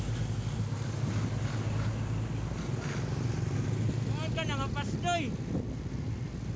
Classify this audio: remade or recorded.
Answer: recorded